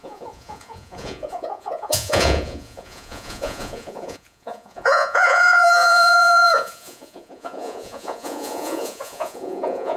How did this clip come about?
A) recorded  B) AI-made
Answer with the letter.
B